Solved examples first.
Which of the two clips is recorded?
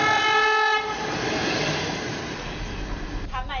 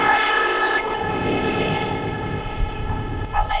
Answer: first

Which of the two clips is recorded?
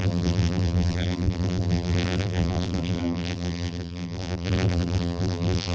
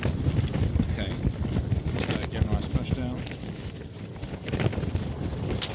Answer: second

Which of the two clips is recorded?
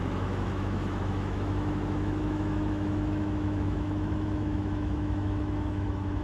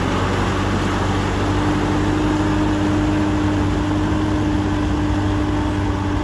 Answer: second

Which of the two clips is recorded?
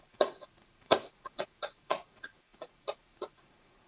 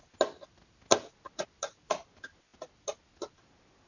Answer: second